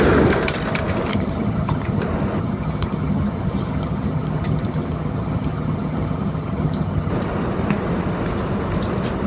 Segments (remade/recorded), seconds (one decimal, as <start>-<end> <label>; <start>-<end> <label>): 0.0-1.1 recorded; 1.1-2.0 remade; 2.0-2.4 recorded; 2.4-7.1 remade; 7.1-9.3 recorded